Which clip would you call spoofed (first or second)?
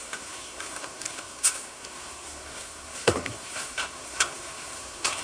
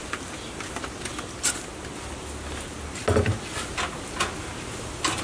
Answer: first